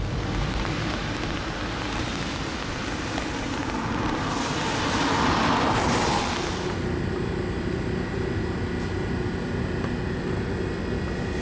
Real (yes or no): yes